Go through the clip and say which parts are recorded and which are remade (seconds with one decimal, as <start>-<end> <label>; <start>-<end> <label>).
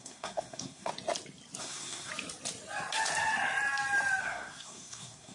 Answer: 0.0-0.9 remade; 0.9-1.6 recorded; 1.6-2.1 remade; 2.1-4.2 recorded; 4.2-5.3 remade